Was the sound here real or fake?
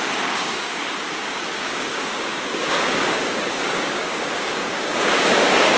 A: fake